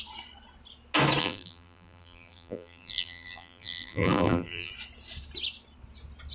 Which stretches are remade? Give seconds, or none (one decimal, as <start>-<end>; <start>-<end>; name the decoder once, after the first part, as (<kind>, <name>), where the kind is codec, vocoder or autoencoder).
1.2-4.7 (vocoder, BigVGAN v2)